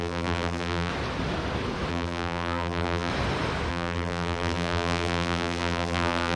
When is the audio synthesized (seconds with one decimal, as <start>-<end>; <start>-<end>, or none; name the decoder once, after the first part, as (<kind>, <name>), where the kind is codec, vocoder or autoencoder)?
0.0-0.9 (vocoder, BigVGAN v2); 1.9-3.1; 3.7-6.4